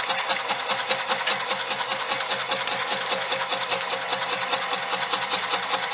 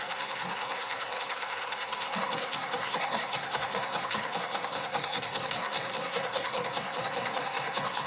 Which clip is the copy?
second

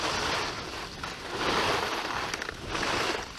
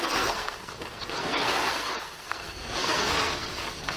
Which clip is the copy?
second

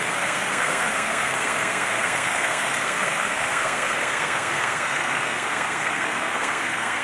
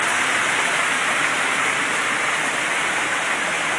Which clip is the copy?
first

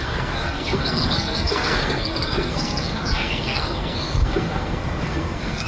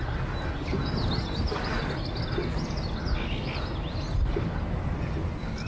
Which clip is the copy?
first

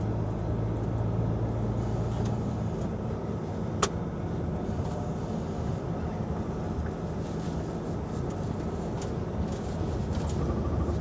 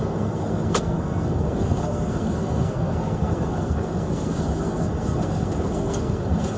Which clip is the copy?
second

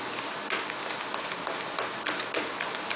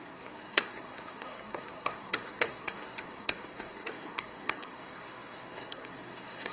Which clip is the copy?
second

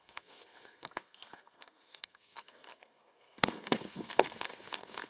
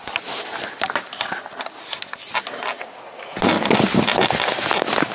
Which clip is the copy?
first